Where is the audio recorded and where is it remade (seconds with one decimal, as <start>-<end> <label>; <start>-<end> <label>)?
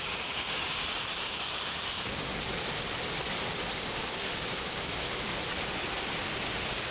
0.0-2.3 remade; 2.3-3.8 recorded; 3.8-5.3 remade; 5.3-6.9 recorded